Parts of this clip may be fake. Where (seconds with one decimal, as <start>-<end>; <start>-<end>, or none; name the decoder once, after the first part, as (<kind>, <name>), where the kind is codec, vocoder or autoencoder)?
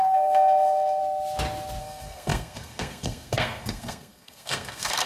0.0-1.0 (codec, SNAC); 1.8-5.1